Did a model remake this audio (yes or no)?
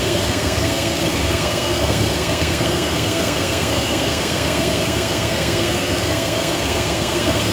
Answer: yes